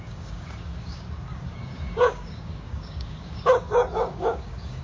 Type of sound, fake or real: fake